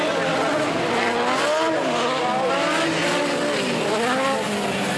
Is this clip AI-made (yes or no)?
no